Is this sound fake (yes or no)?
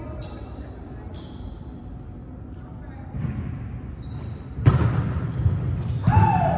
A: no